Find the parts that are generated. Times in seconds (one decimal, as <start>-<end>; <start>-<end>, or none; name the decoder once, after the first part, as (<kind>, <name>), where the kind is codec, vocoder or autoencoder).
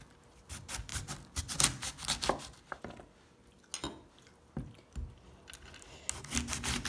0.9-1.4 (vocoder, BigVGAN v2)